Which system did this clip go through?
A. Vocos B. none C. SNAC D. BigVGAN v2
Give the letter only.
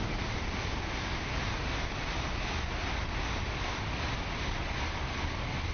B